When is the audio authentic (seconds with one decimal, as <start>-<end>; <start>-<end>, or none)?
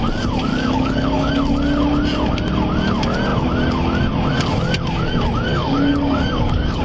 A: 0.0-0.5; 1.3-5.5